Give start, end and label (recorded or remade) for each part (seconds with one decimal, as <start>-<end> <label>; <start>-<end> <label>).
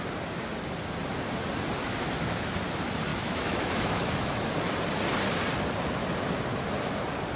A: 0.0-3.1 recorded; 3.1-4.5 remade; 4.5-7.4 recorded